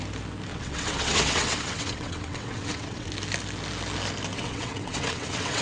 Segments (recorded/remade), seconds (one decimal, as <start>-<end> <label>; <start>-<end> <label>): 0.0-0.5 recorded; 0.5-3.1 remade; 3.1-4.3 recorded; 4.3-5.6 remade